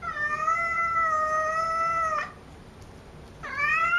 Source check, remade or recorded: recorded